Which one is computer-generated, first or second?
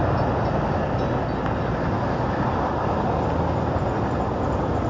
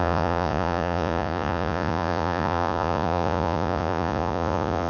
second